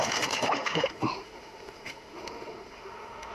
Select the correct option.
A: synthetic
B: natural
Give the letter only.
A